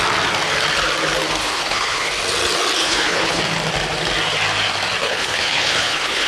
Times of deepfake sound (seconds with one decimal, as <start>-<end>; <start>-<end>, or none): 1.4-2.1; 2.8-3.4; 5.0-6.3